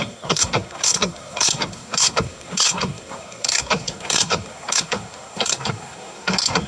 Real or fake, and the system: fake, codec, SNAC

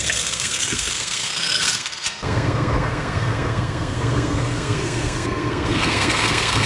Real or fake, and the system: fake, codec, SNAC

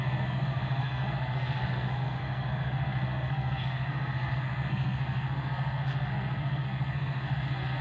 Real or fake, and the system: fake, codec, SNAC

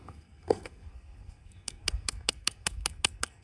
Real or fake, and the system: fake, codec, SNAC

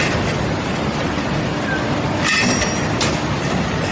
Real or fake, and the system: real